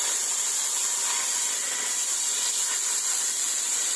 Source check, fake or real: fake